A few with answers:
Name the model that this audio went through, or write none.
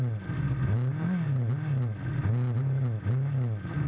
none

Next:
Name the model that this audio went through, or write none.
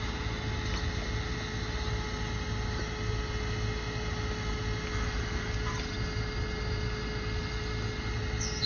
none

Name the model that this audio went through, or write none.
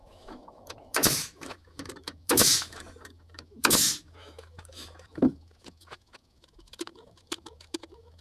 autoencoder, DAC-VAE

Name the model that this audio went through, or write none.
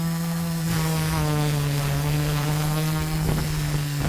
codec, SNAC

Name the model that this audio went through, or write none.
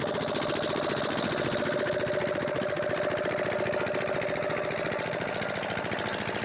none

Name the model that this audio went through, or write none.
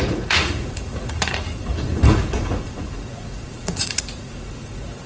vocoder, Vocos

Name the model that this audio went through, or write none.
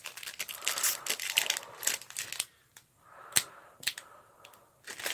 none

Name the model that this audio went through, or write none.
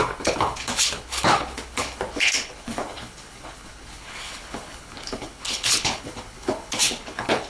codec, HILCodec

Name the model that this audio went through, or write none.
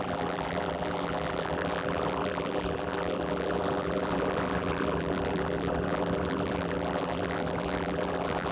vocoder, BigVGAN v2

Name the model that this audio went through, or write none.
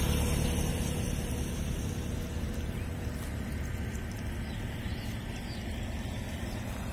none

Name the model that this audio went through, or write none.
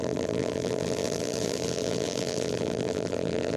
vocoder, BigVGAN v2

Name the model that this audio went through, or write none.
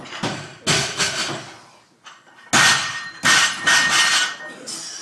none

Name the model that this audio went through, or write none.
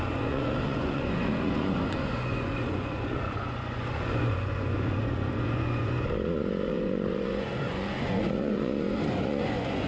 vocoder, Vocos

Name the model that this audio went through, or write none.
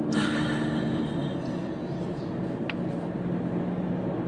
none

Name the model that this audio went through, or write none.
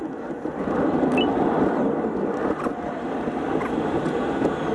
none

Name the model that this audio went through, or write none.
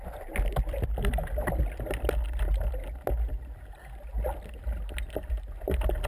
none